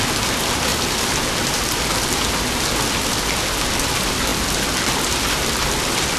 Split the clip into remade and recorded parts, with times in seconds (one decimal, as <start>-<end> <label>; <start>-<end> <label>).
0.0-6.2 recorded